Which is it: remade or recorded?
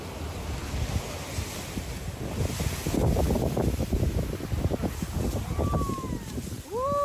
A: recorded